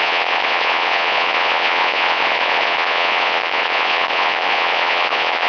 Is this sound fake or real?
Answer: fake